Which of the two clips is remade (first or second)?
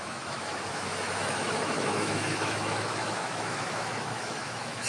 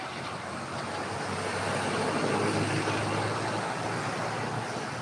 first